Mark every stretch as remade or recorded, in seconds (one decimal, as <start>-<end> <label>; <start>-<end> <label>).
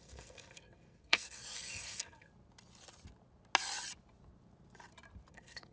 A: 0.0-2.3 remade; 2.3-5.3 recorded; 5.3-5.7 remade